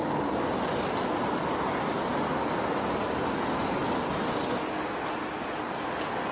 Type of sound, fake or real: real